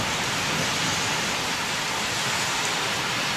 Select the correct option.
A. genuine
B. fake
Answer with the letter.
A